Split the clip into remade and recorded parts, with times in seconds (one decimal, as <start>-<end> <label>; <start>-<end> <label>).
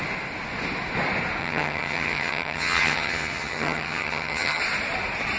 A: 0.0-1.4 recorded; 1.4-4.6 remade; 4.6-5.4 recorded